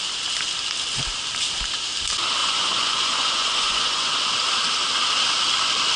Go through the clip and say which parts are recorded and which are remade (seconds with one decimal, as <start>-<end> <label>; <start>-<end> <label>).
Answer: 0.0-2.4 recorded; 2.4-4.3 remade; 4.3-6.0 recorded